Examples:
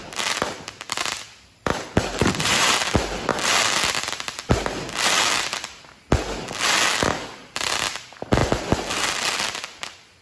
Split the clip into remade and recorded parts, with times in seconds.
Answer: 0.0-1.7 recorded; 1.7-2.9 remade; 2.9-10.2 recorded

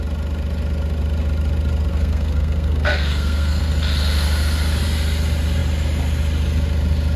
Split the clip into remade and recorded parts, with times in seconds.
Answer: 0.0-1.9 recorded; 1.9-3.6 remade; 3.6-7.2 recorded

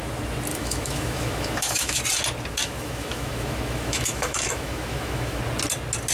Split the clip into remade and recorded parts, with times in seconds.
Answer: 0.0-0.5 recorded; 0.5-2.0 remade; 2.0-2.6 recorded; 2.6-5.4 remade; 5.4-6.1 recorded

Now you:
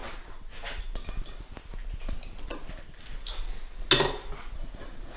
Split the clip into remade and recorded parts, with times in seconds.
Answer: 0.0-5.2 recorded

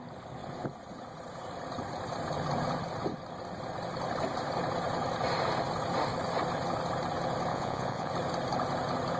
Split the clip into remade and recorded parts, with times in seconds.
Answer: 0.0-7.5 recorded; 7.5-8.1 remade; 8.1-9.2 recorded